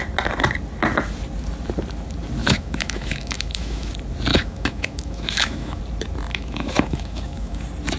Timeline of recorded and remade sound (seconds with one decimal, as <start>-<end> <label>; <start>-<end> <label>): 0.0-2.4 recorded; 2.4-3.9 remade; 3.9-4.3 recorded; 4.3-5.8 remade; 5.8-6.3 recorded; 6.3-7.6 remade; 7.6-8.0 recorded